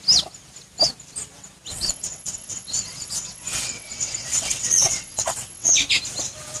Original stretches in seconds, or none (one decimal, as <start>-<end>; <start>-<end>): 0.0-1.7; 5.7-6.6